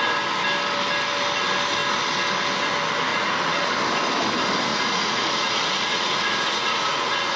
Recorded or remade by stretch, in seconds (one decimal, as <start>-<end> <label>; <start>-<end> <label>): 0.0-3.1 recorded; 3.1-3.7 remade; 3.7-4.7 recorded; 4.7-7.4 remade